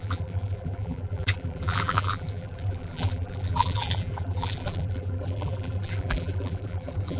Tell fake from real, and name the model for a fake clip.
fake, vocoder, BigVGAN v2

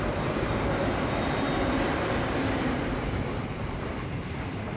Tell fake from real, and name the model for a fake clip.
fake, vocoder, BigVGAN v2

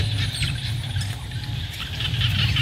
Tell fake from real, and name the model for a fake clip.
real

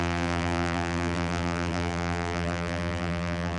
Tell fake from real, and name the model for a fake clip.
fake, vocoder, BigVGAN v2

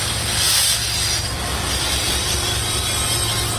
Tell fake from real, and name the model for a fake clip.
real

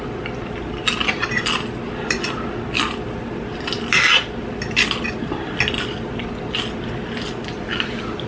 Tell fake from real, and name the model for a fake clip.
real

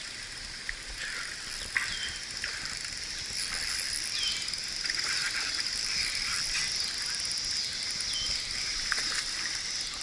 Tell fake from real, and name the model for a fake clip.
fake, vocoder, BigVGAN v2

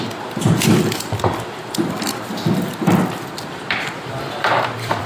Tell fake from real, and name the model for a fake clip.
fake, vocoder, BigVGAN v2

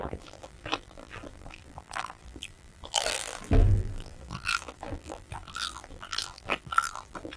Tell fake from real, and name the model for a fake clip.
fake, vocoder, BigVGAN v2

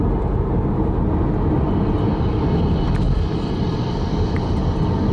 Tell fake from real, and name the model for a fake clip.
real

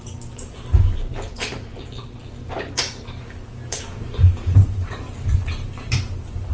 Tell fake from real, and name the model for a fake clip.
fake, vocoder, BigVGAN v2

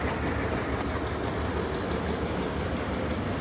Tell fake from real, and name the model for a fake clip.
real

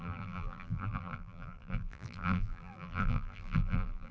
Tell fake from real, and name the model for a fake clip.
fake, vocoder, BigVGAN v2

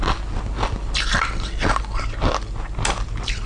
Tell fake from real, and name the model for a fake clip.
real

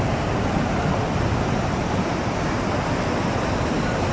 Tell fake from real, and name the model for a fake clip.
real